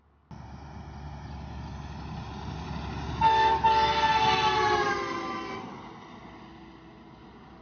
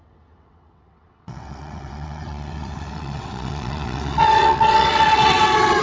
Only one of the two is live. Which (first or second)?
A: first